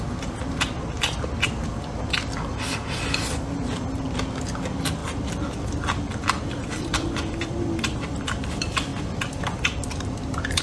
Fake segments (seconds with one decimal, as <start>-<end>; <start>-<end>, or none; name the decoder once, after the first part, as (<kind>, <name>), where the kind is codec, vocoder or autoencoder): 5.0-7.6 (vocoder, BigVGAN v2); 8.9-10.6